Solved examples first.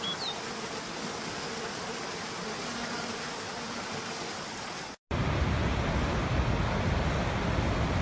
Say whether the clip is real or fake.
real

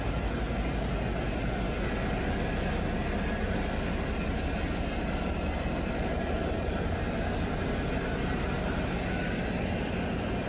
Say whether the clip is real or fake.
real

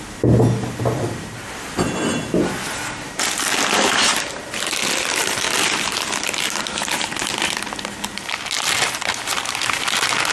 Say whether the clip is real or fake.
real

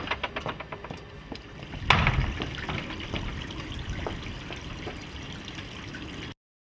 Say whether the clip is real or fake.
real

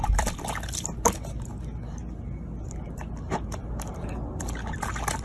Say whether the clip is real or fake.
real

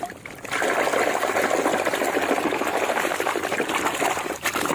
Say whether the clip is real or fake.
real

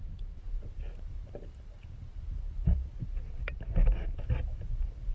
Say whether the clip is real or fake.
fake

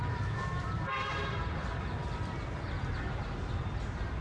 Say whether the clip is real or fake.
fake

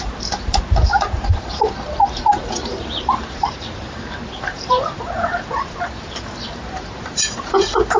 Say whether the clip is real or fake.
fake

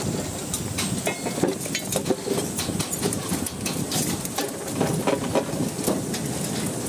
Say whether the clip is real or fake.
real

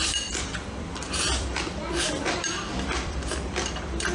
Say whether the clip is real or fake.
fake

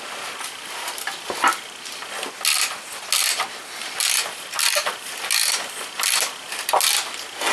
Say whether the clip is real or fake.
real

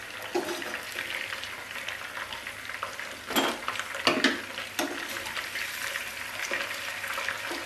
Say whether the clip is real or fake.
real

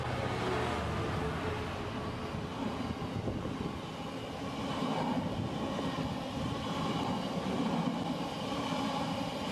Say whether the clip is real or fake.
real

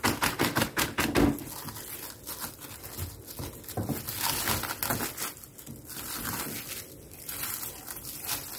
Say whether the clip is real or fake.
real